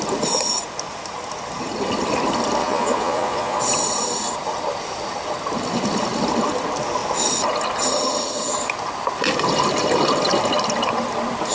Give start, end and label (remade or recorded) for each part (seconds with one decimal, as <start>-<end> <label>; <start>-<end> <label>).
0.0-2.6 recorded; 2.6-3.6 remade; 3.6-11.5 recorded